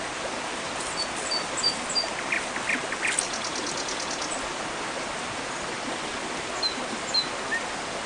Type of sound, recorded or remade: recorded